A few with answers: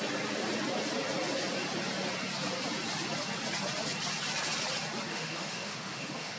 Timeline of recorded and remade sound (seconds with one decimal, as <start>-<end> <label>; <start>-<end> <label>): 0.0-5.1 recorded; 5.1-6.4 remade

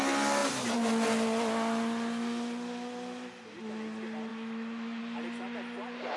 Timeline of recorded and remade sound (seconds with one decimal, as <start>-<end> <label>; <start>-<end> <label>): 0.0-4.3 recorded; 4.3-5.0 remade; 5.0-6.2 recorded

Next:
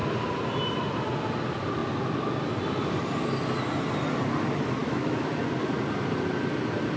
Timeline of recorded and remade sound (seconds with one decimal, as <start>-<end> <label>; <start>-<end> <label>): 0.0-4.8 recorded; 4.8-5.4 remade; 5.4-7.0 recorded

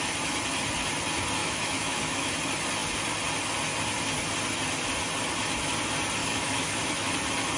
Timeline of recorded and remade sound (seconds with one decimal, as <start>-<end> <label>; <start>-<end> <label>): 0.0-1.4 recorded; 1.4-2.3 remade; 2.3-6.2 recorded; 6.2-7.1 remade; 7.1-7.6 recorded